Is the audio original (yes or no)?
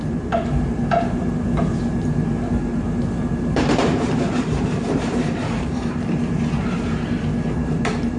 no